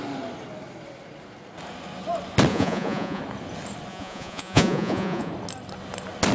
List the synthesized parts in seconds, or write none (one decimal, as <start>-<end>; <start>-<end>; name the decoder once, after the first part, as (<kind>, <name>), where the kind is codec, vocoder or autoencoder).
2.5-3.2 (vocoder, Vocos); 3.9-5.3